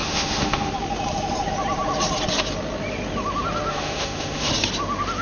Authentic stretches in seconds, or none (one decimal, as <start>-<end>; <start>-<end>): 0.7-3.7; 4.5-5.2